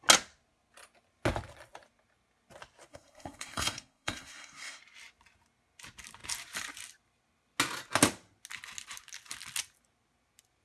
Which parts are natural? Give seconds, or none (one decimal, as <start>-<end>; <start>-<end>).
0.0-2.9; 4.8-10.6